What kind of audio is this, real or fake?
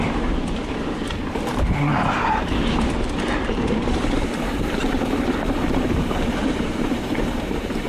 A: fake